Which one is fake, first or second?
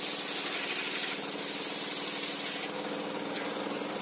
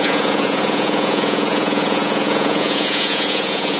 second